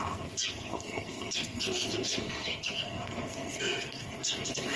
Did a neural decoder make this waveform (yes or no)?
yes